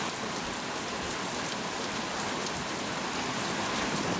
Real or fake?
real